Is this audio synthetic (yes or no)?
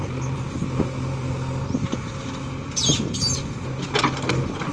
no